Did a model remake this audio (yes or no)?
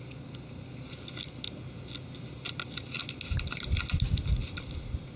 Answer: no